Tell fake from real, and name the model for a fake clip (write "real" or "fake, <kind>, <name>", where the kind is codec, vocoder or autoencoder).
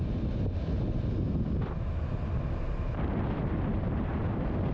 real